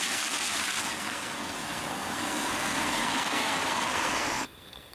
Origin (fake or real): fake